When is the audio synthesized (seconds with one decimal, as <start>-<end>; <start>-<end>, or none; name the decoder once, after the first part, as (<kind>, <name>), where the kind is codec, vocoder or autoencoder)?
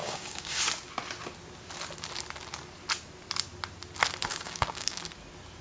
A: 0.0-0.6 (codec, DAC); 4.3-5.0